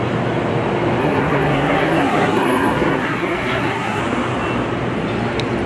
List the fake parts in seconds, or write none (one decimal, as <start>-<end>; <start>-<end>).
1.0-4.0